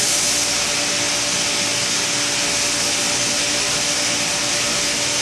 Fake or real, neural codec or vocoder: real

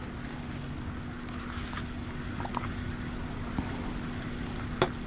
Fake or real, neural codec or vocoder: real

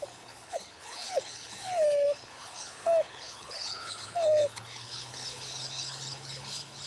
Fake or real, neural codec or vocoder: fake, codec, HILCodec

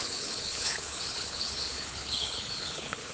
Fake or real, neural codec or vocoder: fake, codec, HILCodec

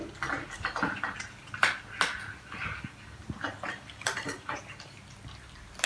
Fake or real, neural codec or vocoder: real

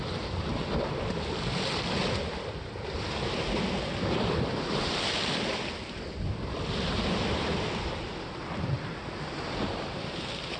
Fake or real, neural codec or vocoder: real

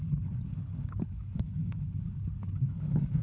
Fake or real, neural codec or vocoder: fake, codec, HILCodec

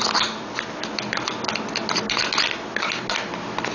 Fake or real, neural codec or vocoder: real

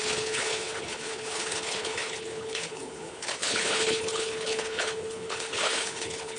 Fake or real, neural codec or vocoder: fake, codec, HILCodec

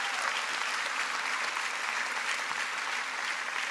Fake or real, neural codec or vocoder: real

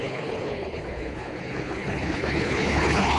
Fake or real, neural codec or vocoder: fake, codec, HILCodec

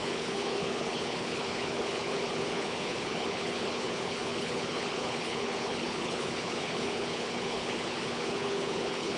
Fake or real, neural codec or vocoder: fake, codec, HILCodec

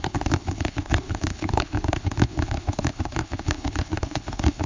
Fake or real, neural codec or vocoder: fake, codec, HILCodec